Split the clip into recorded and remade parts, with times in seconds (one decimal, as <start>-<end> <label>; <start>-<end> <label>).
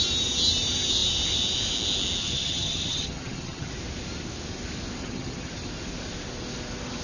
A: 0.0-2.2 recorded; 2.2-3.7 remade; 3.7-5.0 recorded; 5.0-5.5 remade; 5.5-7.0 recorded